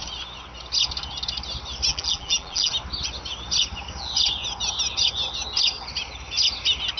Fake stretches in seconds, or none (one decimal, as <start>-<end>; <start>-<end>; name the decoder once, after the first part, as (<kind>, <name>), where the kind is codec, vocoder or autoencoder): 1.9-2.7 (vocoder, BigVGAN v2)